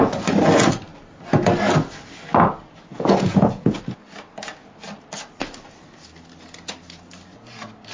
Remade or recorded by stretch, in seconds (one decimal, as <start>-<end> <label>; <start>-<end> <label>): 0.0-2.9 recorded; 2.9-3.8 remade; 3.8-7.9 recorded